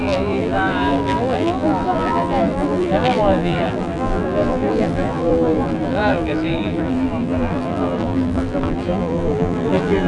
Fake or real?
fake